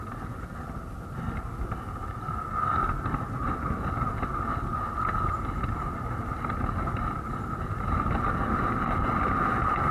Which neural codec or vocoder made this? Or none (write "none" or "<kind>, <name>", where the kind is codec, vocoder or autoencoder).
none